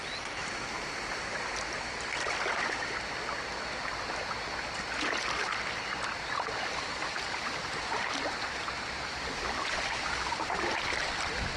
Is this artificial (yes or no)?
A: yes